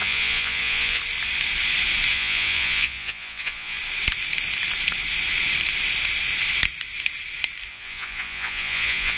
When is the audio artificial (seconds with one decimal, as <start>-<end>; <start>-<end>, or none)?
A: 0.0-1.0; 2.1-3.8; 7.7-9.2